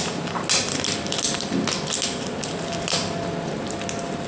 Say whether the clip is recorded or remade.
recorded